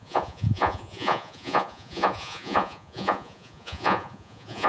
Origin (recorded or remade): remade